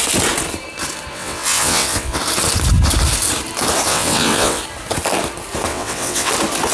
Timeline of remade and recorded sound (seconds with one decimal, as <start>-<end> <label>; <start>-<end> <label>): 0.0-1.1 recorded; 1.1-2.2 remade; 2.2-3.9 recorded; 3.9-4.6 remade; 4.6-5.7 recorded; 5.7-6.3 remade; 6.3-6.7 recorded